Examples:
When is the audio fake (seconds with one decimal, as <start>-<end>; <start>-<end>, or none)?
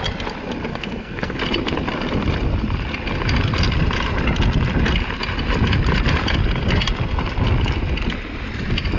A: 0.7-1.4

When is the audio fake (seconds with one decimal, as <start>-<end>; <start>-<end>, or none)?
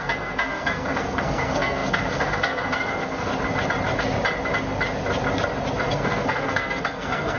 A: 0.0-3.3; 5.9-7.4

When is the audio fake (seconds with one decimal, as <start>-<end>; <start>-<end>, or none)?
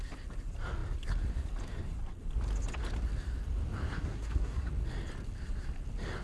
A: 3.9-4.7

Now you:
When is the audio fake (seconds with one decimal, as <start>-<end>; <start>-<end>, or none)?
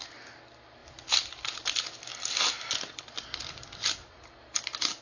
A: none